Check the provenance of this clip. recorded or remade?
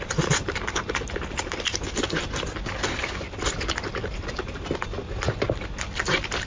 recorded